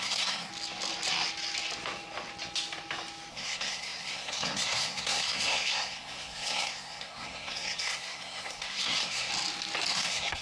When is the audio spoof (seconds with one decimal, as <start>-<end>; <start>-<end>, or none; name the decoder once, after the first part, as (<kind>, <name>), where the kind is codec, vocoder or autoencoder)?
0.0-0.5 (codec, SNAC); 3.3-9.3; 9.9-10.4